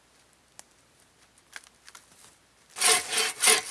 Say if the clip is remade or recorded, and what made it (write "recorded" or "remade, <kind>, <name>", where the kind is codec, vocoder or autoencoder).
recorded